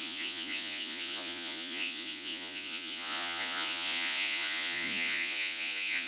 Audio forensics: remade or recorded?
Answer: remade